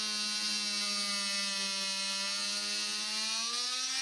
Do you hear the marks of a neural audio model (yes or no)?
no